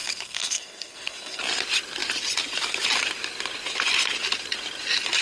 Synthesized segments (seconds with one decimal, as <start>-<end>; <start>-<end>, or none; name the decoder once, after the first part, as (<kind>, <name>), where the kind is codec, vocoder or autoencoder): 0.0-1.4 (codec, SNAC)